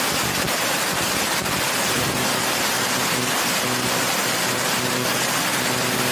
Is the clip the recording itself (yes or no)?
yes